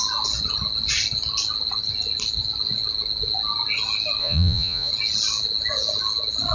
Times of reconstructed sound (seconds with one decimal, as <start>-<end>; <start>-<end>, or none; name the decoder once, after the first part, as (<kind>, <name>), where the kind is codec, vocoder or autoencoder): 4.2-4.9 (vocoder, Vocos)